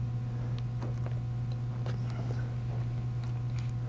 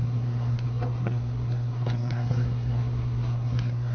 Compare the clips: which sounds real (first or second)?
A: first